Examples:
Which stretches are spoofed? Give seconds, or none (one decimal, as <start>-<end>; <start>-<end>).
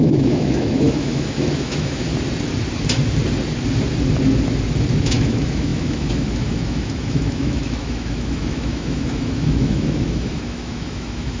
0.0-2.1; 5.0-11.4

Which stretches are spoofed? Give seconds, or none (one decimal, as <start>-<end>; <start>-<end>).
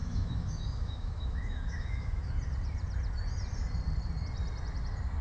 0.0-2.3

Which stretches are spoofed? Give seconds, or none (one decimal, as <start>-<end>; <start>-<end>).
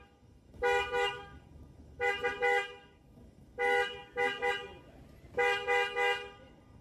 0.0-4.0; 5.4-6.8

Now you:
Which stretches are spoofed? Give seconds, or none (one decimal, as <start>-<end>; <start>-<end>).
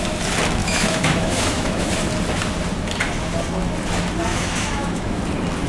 0.6-1.9; 4.3-5.2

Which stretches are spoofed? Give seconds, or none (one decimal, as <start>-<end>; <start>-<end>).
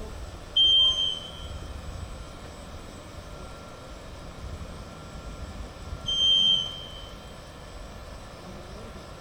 none